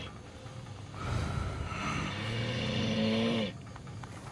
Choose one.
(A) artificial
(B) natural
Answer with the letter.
B